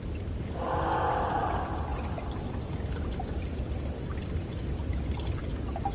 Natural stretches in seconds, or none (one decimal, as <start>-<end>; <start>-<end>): 0.0-5.9